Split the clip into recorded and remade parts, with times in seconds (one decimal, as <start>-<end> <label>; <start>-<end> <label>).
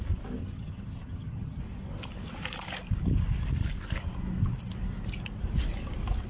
0.0-0.4 recorded; 0.4-1.6 remade; 1.6-6.3 recorded